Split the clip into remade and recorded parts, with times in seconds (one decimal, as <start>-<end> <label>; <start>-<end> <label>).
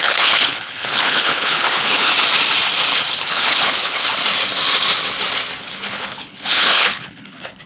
0.0-2.1 remade; 2.1-3.1 recorded; 3.1-4.1 remade; 4.1-5.6 recorded; 5.6-7.7 remade